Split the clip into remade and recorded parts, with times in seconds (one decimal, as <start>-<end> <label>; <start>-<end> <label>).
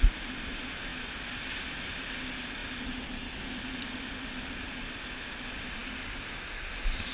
0.0-7.1 recorded